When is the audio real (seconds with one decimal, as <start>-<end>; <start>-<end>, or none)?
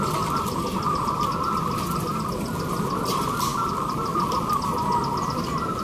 0.0-3.5; 4.6-5.8